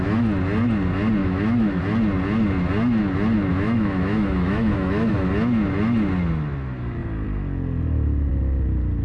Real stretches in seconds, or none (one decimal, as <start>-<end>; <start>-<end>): 0.0-1.2; 1.8-3.5; 5.1-9.0